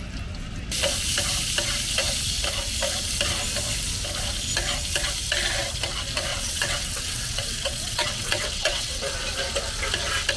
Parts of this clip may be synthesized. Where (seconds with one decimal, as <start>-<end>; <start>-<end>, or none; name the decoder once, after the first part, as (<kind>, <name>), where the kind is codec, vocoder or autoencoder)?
6.3-9.1 (vocoder, WaveNeXt)